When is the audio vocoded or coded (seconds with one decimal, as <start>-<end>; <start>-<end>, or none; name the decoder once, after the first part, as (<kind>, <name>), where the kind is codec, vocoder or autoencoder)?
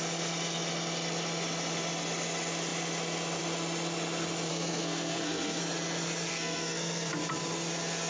4.5-5.6 (codec, SNAC); 6.3-7.1